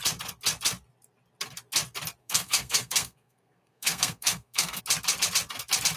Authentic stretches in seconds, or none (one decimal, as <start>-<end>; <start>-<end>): 0.0-2.2; 4.8-6.0